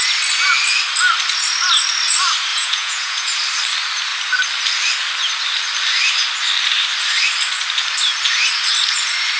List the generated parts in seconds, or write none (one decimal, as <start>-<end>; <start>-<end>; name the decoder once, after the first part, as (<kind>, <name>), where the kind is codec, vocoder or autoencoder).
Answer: 2.5-3.4 (vocoder, Vocos)